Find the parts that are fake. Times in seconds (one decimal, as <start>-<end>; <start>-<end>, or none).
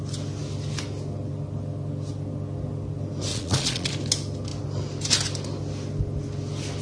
3.3-3.9